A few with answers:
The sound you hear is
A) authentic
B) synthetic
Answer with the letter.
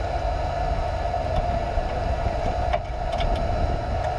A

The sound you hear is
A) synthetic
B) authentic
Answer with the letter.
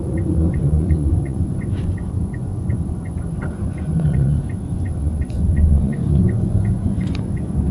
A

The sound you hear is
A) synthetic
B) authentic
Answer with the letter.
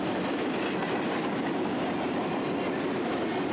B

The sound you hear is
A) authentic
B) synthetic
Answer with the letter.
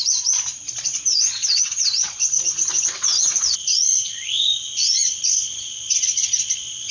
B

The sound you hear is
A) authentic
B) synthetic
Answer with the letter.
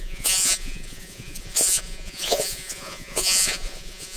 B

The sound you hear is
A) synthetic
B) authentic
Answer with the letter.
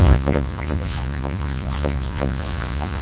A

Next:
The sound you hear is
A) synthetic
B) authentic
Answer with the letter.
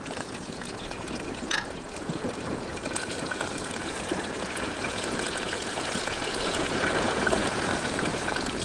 A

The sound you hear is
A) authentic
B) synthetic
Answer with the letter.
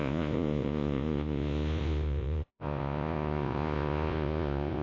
B